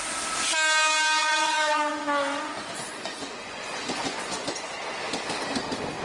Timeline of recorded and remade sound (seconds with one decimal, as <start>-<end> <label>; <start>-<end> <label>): 0.0-1.2 recorded; 1.2-4.8 remade; 4.8-6.0 recorded